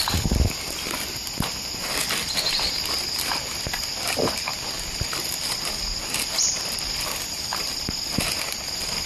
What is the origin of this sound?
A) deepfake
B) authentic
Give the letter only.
B